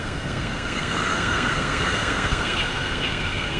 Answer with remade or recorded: remade